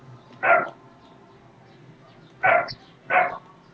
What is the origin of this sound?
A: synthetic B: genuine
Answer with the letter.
B